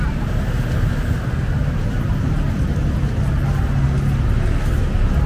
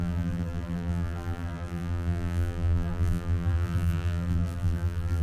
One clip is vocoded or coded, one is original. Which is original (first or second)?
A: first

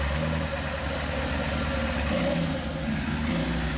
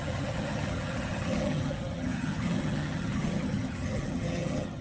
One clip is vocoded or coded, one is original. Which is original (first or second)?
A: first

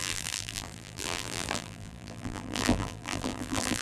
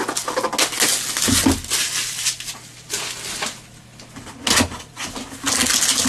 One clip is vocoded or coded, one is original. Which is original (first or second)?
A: second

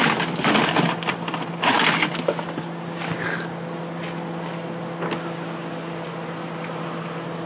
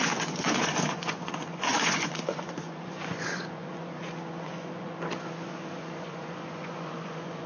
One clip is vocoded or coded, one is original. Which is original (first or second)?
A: first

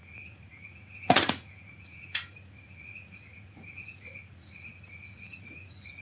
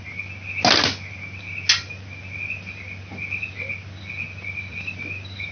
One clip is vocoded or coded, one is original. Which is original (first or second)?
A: second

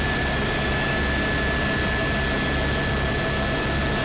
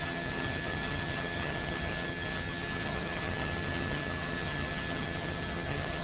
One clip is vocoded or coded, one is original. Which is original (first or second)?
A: first